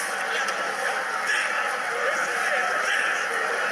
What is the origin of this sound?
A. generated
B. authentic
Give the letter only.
B